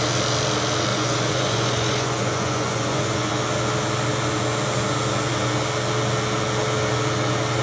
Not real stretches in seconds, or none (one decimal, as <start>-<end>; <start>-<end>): 0.9-3.3